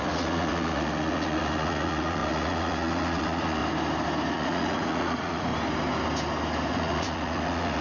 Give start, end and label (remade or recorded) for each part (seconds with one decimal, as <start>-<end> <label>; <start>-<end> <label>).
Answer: 0.0-3.6 remade; 3.6-4.3 recorded; 4.3-5.5 remade; 5.5-6.7 recorded; 6.7-7.8 remade